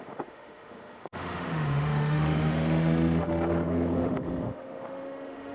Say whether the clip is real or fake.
fake